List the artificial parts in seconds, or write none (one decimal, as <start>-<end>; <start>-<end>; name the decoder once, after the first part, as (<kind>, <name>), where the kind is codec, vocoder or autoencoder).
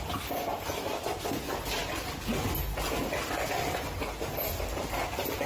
none